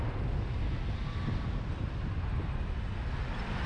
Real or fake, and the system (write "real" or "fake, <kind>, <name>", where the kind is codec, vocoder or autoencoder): real